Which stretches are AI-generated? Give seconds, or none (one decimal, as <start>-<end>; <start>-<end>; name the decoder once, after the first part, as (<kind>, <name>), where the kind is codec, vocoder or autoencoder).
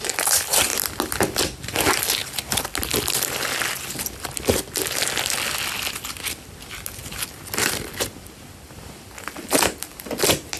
none